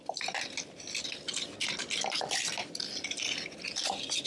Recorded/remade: recorded